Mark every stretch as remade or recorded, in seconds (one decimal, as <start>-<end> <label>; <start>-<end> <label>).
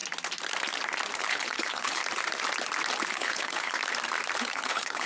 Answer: 0.0-1.2 recorded; 1.2-2.0 remade; 2.0-3.1 recorded; 3.1-3.8 remade; 3.8-4.4 recorded; 4.4-5.1 remade